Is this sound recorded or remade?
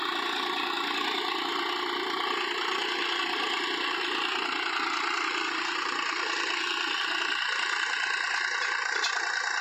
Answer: recorded